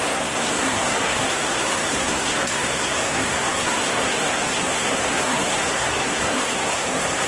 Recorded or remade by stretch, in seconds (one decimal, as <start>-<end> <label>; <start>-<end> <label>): 0.0-7.3 remade